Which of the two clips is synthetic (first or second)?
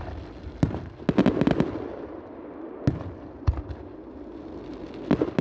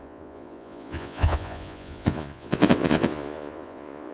second